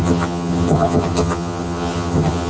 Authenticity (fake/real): fake